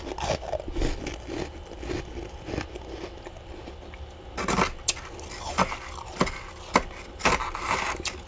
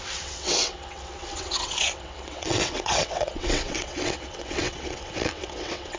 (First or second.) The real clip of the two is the first